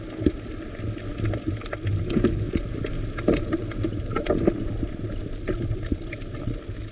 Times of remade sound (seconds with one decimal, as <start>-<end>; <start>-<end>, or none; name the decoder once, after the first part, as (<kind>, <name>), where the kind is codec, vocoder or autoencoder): none

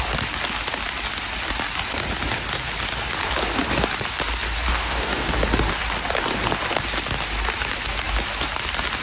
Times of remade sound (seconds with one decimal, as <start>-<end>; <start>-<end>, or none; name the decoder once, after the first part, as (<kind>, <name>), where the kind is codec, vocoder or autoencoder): 4.7-5.3 (autoencoder, DAC-VAE)

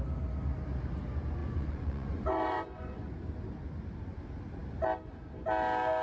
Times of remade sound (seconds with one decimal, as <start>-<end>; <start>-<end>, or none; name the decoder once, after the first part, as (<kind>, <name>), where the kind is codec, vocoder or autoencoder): 1.4-3.1 (vocoder, Vocos)

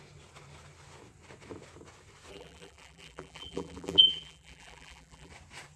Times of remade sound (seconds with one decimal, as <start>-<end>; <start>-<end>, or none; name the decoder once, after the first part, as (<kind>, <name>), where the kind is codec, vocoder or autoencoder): 2.3-5.3 (vocoder, BigVGAN v2)